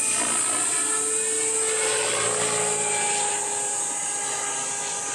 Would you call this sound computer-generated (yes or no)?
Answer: no